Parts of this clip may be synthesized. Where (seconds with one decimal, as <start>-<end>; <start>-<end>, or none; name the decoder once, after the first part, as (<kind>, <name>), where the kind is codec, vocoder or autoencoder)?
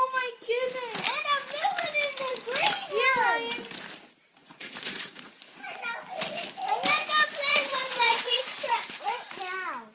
4.4-5.8 (vocoder, Vocos); 7.5-9.4